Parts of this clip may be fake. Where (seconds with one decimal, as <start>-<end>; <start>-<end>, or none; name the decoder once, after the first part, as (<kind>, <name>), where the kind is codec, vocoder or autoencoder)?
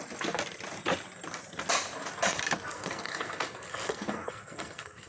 2.7-5.1 (codec, SNAC)